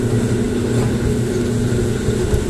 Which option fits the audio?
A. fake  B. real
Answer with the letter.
B